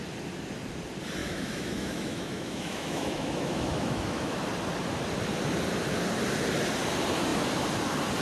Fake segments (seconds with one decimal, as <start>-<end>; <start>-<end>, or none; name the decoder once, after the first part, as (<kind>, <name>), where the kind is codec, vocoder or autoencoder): 1.2-4.4 (autoencoder, DAC-VAE)